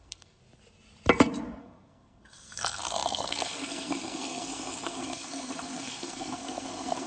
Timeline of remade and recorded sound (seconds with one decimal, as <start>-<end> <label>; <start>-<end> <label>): 0.0-0.4 remade; 0.4-1.6 recorded; 1.6-7.1 remade